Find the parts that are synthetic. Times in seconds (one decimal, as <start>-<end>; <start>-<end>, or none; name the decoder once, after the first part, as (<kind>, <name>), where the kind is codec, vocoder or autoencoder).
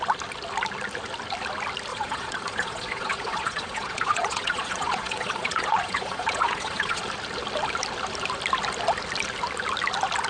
1.9-7.0 (vocoder, Vocos)